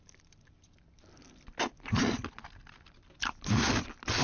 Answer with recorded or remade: recorded